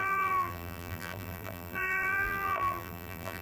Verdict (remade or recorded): remade